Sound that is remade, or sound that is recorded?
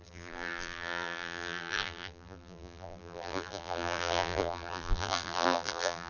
remade